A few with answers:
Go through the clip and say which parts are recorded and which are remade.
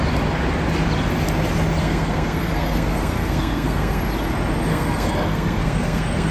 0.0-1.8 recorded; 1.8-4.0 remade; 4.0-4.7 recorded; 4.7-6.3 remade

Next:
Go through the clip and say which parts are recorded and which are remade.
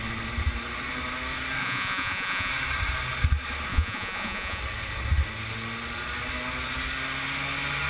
0.0-1.6 recorded; 1.6-2.5 remade; 2.5-3.7 recorded; 3.7-4.6 remade; 4.6-7.9 recorded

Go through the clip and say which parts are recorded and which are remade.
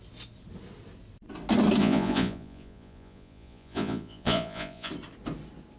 0.0-1.8 recorded; 1.8-4.9 remade; 4.9-5.8 recorded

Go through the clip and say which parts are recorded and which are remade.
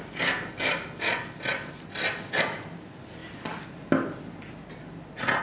0.0-5.4 recorded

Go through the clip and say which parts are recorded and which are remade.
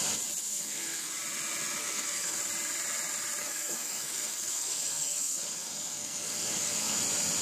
0.0-0.4 recorded; 0.4-1.1 remade; 1.1-1.8 recorded; 1.8-2.4 remade; 2.4-3.4 recorded; 3.4-7.0 remade; 7.0-7.4 recorded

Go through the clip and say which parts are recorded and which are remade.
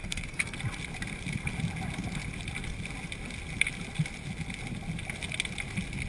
0.0-0.6 remade; 0.6-6.1 recorded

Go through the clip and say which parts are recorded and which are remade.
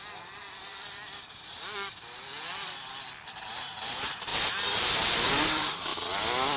0.0-4.3 remade; 4.3-5.3 recorded; 5.3-5.9 remade; 5.9-6.6 recorded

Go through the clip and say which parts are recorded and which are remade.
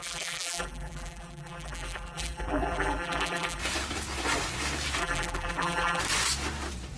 0.0-3.6 remade; 3.6-5.0 recorded; 5.0-6.0 remade; 6.0-7.0 recorded